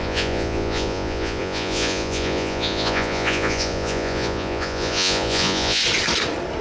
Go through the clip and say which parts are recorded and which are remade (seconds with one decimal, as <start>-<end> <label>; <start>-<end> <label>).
0.0-5.8 remade; 5.8-6.6 recorded